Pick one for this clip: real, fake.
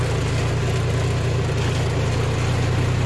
real